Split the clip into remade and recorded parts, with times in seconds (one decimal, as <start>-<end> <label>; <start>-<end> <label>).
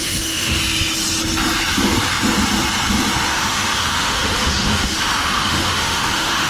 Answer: 0.0-0.6 remade; 0.6-3.3 recorded; 3.3-6.5 remade